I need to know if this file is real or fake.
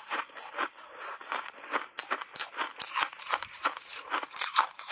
fake